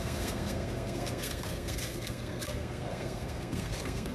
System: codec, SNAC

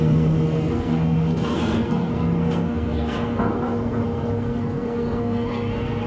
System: codec, SNAC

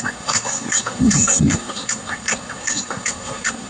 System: codec, SNAC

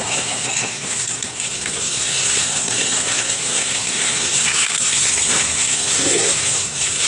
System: codec, SNAC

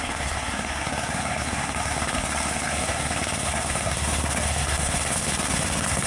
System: codec, SNAC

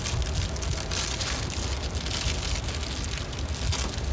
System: none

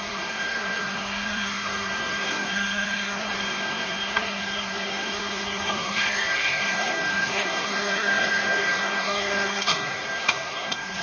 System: codec, SNAC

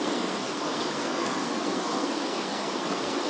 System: codec, SNAC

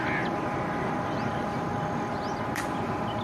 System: none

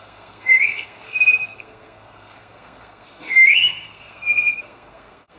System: codec, SNAC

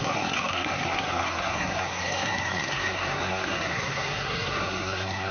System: codec, SNAC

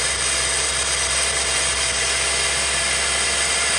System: none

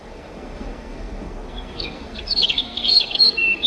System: codec, SNAC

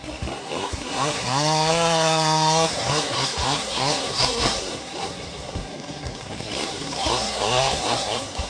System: codec, SNAC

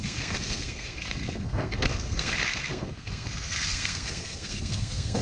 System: codec, SNAC